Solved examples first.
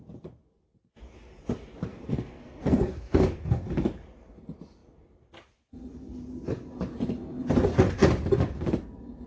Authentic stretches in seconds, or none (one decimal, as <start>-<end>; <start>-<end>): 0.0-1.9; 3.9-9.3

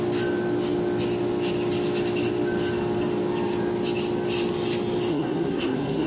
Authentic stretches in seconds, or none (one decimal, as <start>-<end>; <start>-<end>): 0.0-5.1

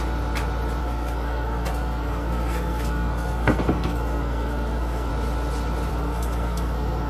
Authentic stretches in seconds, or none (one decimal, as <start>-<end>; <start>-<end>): 0.0-0.8; 5.1-5.9

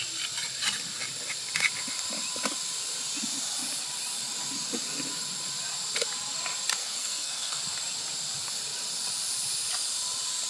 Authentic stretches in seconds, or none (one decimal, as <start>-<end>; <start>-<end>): 0.0-6.8; 7.6-10.5

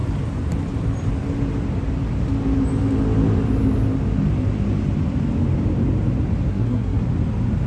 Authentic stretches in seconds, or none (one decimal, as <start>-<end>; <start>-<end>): 0.0-6.5; 7.0-7.7

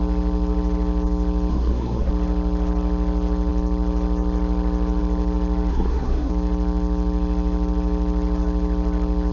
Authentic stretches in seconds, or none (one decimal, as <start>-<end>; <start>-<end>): 0.0-1.5; 2.1-5.7; 6.3-9.3